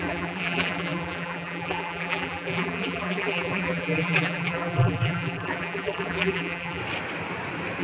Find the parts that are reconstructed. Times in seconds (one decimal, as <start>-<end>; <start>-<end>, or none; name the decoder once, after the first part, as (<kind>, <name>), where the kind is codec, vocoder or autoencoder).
0.0-6.8 (vocoder, BigVGAN v2)